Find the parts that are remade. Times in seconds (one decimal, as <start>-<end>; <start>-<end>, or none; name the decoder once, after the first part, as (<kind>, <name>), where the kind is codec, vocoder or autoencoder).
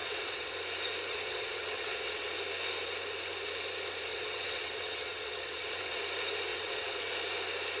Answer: 0.0-0.5 (vocoder, WaveNeXt); 1.1-2.3; 4.1-6.0; 6.5-7.1